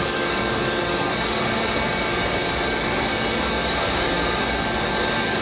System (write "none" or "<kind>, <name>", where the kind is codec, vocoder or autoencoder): codec, DAC